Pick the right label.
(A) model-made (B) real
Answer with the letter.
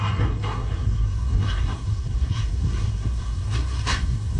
A